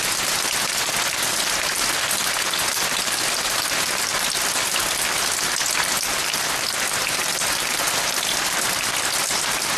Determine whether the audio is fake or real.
real